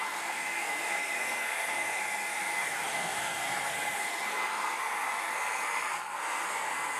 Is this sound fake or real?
fake